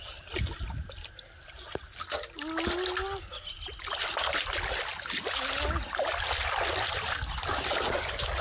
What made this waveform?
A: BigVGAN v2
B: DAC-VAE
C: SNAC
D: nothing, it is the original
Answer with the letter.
D